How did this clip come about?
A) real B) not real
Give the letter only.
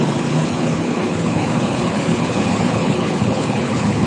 B